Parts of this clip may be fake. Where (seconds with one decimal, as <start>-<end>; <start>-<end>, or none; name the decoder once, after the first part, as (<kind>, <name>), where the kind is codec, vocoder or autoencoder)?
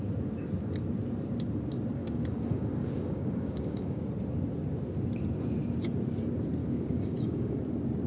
2.0-4.0 (codec, DAC); 6.6-7.6